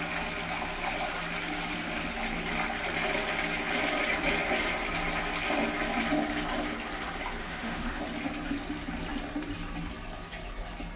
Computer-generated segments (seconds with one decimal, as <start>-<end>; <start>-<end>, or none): 7.4-8.0